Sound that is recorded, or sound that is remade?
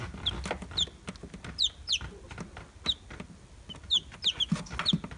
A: recorded